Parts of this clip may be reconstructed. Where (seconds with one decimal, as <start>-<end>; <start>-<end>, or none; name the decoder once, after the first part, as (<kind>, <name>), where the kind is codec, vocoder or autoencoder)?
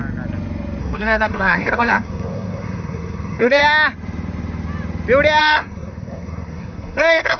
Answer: 0.8-3.6 (codec, SNAC); 5.4-7.4